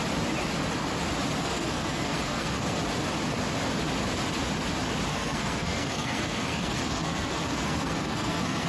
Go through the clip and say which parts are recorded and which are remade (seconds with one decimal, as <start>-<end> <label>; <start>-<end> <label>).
0.0-1.4 recorded; 1.4-2.8 remade; 2.8-5.1 recorded; 5.1-8.7 remade